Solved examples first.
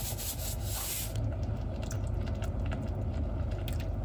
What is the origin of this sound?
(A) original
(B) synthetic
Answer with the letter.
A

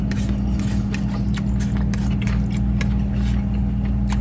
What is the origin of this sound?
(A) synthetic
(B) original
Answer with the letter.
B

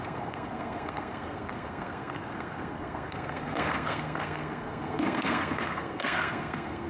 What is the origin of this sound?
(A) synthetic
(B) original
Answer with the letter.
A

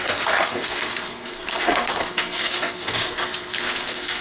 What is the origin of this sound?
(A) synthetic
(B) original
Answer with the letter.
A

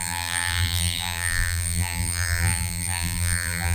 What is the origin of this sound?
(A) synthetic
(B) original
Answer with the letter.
A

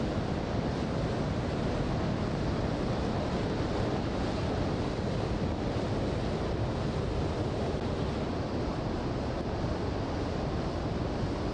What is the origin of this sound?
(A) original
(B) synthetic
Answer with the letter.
A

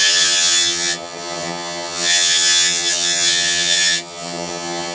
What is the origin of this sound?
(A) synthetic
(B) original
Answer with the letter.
A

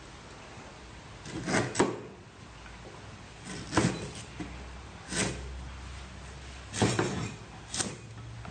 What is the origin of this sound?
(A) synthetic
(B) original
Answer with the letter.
B